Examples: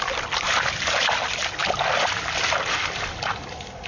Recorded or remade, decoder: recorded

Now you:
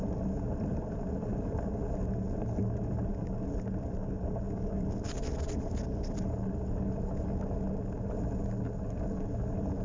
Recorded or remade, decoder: recorded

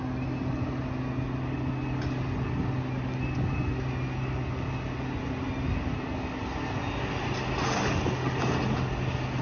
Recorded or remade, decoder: recorded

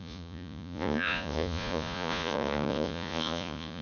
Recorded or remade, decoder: remade, vocoder, Vocos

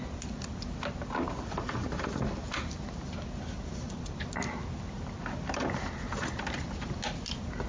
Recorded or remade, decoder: recorded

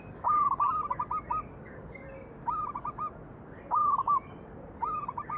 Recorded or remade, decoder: recorded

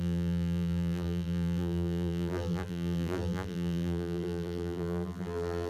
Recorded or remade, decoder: remade, vocoder, BigVGAN v2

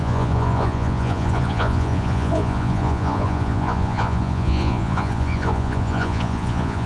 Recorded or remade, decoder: remade, vocoder, Vocos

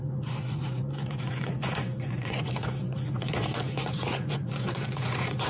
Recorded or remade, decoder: remade, vocoder, Vocos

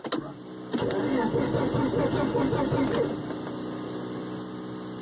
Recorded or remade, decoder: recorded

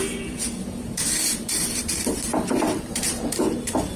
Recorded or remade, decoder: remade, vocoder, BigVGAN v2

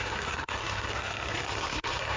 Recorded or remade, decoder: remade, codec, SNAC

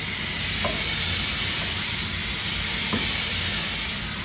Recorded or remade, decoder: recorded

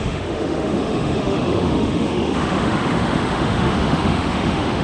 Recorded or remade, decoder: remade, autoencoder, DAC-VAE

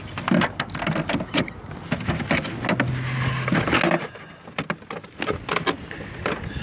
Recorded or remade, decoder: recorded